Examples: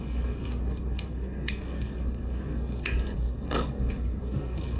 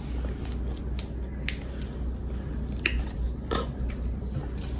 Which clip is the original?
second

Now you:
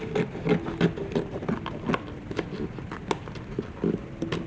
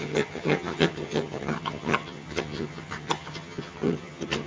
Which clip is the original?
first